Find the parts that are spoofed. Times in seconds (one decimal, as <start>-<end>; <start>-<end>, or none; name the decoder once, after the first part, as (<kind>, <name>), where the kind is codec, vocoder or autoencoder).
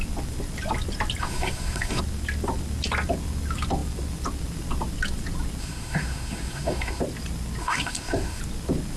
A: 1.2-2.0 (codec, SNAC); 5.6-7.0; 7.6-8.4